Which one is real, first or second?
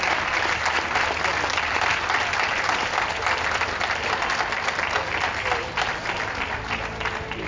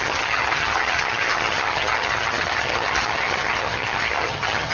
first